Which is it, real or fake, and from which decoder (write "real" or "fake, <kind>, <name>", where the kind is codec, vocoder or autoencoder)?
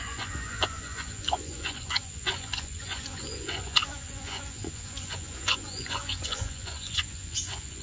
fake, vocoder, Vocos